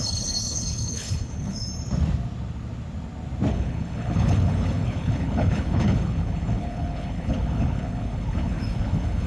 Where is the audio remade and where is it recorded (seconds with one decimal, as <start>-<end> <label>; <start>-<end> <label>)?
0.0-1.7 remade; 1.7-3.5 recorded; 3.5-9.3 remade